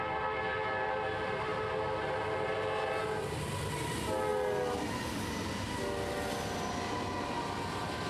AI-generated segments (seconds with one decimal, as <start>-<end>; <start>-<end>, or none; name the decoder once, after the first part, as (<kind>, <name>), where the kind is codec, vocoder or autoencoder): none